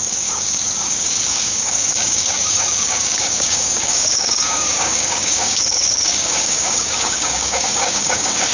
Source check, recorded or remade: remade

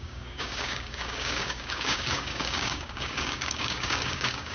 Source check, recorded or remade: remade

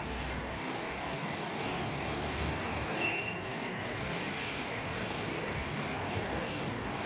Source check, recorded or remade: remade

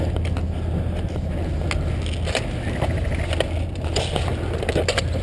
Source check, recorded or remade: recorded